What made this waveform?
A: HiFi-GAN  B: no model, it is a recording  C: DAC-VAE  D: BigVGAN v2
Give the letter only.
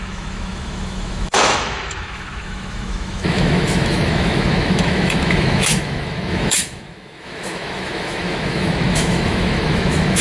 C